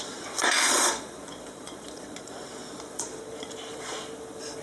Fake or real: fake